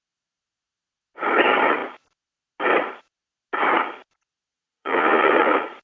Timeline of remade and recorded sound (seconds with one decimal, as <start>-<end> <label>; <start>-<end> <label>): 0.0-4.5 recorded; 4.5-5.8 remade

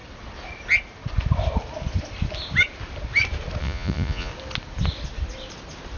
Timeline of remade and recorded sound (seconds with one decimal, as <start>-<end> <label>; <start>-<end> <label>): 0.0-3.6 recorded; 3.6-4.3 remade; 4.3-6.0 recorded

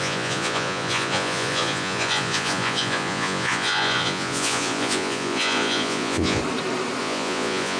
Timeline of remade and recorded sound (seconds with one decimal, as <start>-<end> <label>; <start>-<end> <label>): 0.0-6.4 remade; 6.4-7.0 recorded; 7.0-7.8 remade

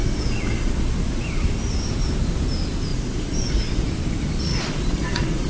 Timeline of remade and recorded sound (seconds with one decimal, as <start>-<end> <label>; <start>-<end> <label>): 0.0-0.7 remade; 0.7-2.9 recorded; 2.9-3.9 remade; 3.9-4.5 recorded; 4.5-5.5 remade

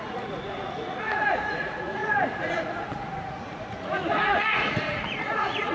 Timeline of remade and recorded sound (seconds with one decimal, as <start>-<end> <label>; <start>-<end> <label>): 0.0-5.7 remade

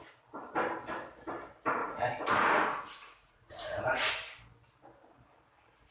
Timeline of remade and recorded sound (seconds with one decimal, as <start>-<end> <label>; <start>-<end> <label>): 0.0-1.8 recorded; 1.8-4.1 remade; 4.1-5.9 recorded

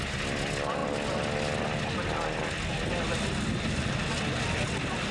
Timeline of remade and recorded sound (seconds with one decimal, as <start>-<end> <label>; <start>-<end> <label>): 0.0-5.1 recorded

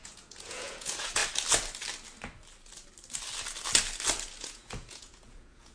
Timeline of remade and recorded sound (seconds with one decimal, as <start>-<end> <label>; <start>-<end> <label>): 0.0-1.2 remade; 1.2-4.4 recorded; 4.4-5.7 remade